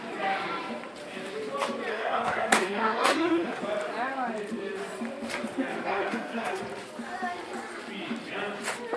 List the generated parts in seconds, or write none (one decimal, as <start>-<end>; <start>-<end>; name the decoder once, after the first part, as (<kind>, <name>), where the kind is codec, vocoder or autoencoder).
1.9-3.6 (codec, SNAC); 5.9-6.6

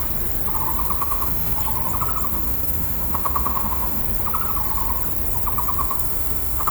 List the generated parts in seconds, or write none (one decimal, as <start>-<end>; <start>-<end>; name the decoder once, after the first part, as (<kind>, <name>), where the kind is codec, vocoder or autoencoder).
1.0-1.6 (autoencoder, DAC-VAE); 2.3-4.0; 5.8-6.7

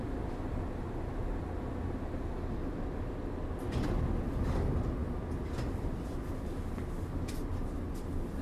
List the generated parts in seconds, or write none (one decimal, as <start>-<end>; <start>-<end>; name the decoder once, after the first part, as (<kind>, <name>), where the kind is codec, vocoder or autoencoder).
none